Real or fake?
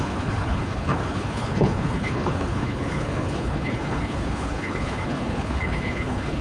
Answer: fake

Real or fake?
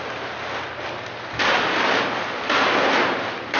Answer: real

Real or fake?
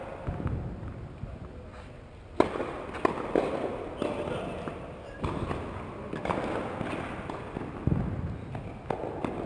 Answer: real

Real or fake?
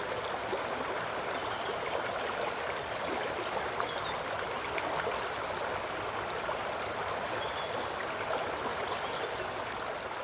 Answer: real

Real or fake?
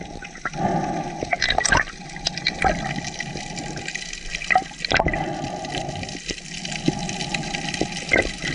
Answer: real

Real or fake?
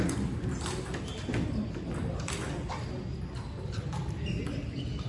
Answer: real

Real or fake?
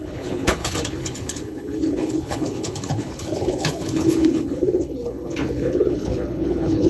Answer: fake